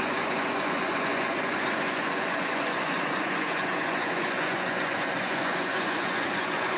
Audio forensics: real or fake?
fake